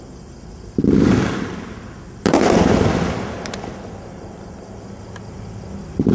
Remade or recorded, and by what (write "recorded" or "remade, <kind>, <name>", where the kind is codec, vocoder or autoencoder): recorded